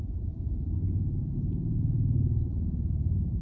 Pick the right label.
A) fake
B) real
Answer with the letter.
A